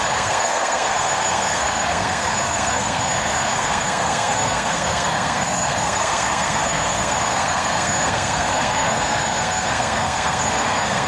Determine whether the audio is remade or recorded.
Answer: remade